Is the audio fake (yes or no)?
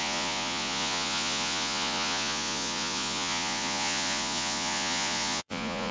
yes